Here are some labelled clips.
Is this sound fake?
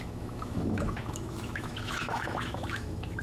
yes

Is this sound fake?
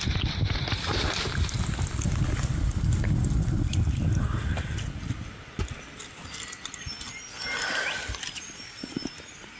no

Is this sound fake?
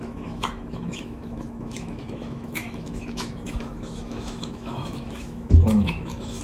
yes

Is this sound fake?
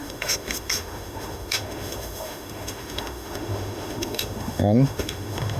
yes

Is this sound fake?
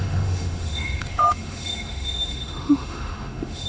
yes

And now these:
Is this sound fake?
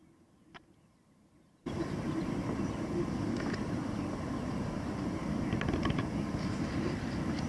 no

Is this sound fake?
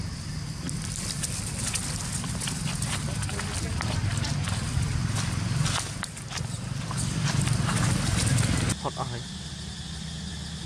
no